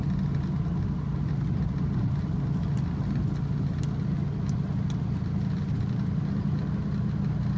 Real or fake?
real